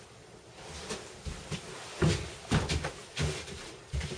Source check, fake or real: real